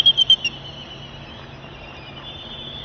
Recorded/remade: recorded